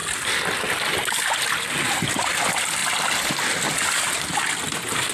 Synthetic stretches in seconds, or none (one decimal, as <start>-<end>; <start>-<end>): none

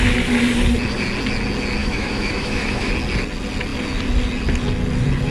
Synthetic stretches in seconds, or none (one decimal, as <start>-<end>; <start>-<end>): 1.8-2.9

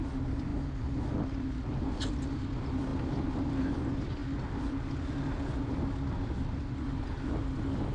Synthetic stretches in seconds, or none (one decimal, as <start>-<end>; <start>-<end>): none